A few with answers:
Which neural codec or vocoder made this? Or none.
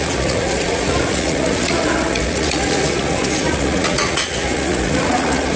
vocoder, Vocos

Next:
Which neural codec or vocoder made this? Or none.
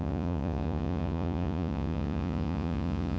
vocoder, Vocos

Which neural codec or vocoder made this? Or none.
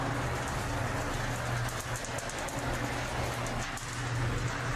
none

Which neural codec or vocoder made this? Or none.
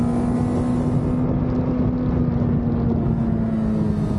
none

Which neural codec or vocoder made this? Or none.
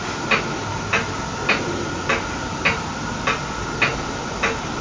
none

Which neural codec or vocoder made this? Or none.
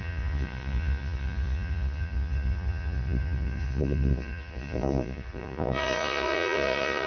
vocoder, Vocos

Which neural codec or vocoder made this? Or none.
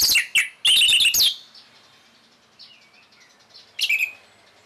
none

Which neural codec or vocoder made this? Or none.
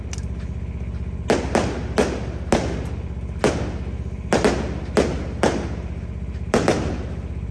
none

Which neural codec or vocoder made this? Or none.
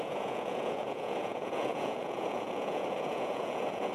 vocoder, Vocos